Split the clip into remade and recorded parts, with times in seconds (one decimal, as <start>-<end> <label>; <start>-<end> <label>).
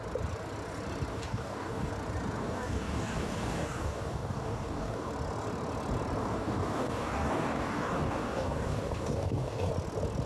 0.0-1.1 recorded; 1.1-1.9 remade; 1.9-2.4 recorded; 2.4-5.1 remade; 5.1-6.2 recorded; 6.2-9.7 remade; 9.7-10.3 recorded